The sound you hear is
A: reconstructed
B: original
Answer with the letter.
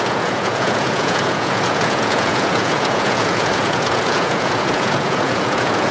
A